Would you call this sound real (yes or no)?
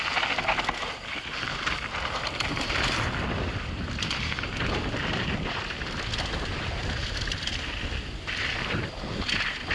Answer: yes